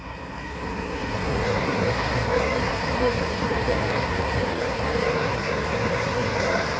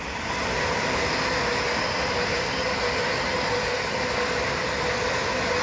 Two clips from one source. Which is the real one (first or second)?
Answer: second